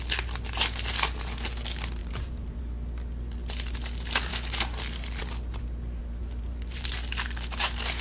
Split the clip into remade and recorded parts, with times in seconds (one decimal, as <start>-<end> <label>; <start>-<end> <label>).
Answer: 0.0-2.0 recorded; 2.0-2.6 remade; 2.6-6.0 recorded; 6.0-6.9 remade; 6.9-8.0 recorded